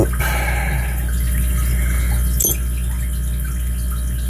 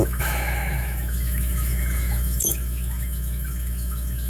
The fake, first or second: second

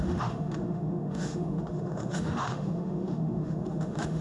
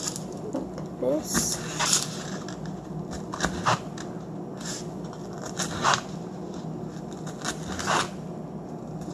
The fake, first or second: first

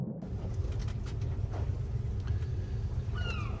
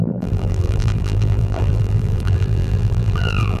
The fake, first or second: second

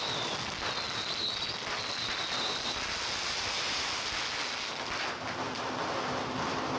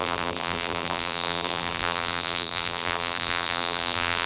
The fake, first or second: second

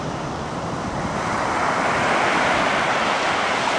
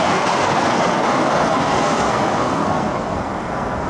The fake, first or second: second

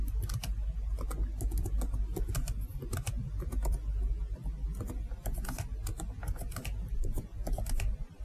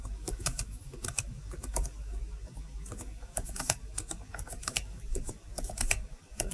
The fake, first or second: second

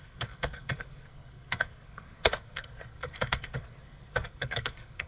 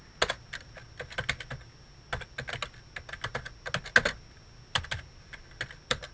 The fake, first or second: first